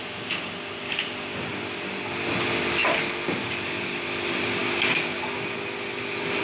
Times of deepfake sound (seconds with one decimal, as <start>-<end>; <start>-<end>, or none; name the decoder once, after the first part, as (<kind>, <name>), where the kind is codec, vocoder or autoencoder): none

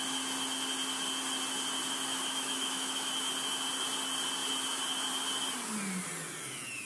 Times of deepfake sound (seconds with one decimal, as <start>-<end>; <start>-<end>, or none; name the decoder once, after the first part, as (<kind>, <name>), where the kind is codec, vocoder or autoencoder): 2.1-3.1 (autoencoder, DAC-VAE)

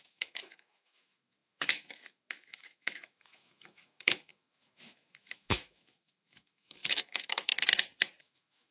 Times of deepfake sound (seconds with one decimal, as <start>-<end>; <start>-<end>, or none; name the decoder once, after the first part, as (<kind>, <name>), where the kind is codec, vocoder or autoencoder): 0.0-7.5 (autoencoder, DAC-VAE); 8.2-8.7

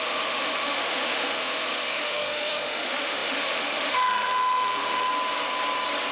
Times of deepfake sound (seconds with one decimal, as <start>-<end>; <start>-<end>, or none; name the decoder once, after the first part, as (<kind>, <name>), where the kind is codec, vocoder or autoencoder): 0.0-5.1 (autoencoder, DAC-VAE)

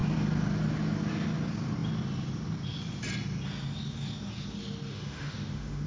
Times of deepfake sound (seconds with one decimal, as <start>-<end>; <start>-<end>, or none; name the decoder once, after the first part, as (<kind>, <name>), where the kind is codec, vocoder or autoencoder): 4.9-5.9 (autoencoder, DAC-VAE)

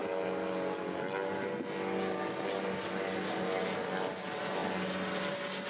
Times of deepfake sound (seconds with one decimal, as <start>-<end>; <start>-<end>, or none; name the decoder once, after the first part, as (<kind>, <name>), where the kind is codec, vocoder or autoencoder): none

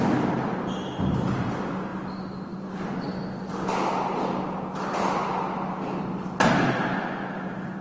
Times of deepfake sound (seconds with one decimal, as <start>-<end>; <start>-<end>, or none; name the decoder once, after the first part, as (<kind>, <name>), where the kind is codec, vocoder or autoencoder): none